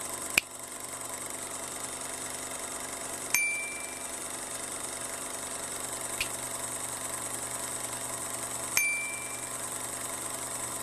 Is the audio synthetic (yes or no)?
no